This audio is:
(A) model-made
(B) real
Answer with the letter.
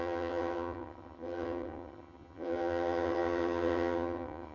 A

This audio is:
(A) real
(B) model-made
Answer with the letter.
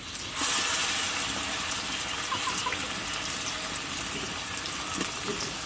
A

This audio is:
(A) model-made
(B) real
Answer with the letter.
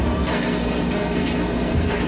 A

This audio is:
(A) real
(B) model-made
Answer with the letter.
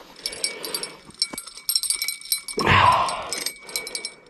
A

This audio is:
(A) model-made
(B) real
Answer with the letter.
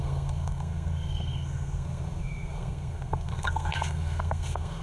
A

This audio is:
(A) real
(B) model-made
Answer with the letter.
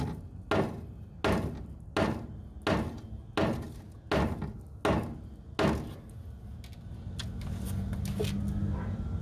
A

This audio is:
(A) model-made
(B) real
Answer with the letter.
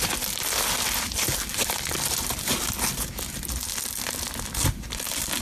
B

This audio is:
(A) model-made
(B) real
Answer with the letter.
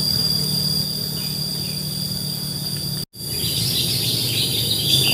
B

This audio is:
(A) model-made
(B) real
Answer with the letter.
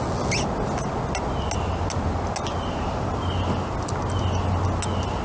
B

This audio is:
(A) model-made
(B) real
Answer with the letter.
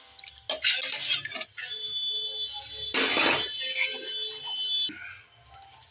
B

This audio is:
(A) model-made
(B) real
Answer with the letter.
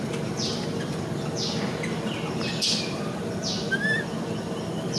B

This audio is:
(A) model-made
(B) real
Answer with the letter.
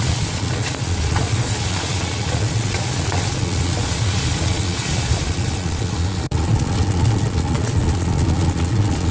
A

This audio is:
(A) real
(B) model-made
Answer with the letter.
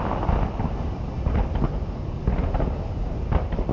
A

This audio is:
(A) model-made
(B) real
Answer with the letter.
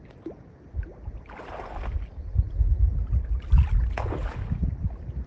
B